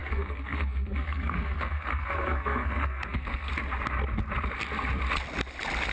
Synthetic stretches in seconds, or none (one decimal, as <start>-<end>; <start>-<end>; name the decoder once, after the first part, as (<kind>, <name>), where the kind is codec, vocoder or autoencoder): 0.0-3.5 (codec, SNAC)

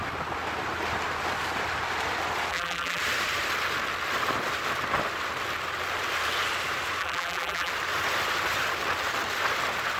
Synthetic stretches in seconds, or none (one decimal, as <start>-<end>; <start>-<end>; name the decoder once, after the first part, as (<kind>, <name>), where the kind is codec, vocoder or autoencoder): 2.5-3.0 (vocoder, BigVGAN v2); 7.0-7.7

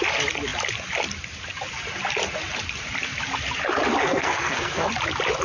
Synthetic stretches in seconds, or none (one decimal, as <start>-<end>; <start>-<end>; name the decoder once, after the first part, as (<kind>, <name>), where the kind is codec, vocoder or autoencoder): 4.0-4.9 (codec, SNAC)

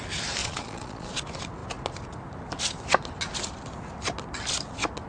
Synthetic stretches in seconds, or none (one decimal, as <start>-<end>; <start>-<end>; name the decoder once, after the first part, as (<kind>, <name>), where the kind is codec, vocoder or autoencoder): 0.4-1.1 (vocoder, Vocos)

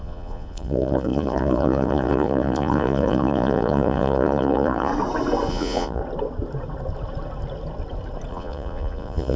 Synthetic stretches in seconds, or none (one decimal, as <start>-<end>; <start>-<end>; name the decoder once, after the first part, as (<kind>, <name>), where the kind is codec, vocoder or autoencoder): 0.0-4.9 (vocoder, Vocos); 5.5-6.0; 8.3-9.4

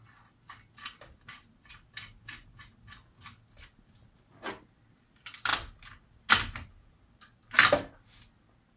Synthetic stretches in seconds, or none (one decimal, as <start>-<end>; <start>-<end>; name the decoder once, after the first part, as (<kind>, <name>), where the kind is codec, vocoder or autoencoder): none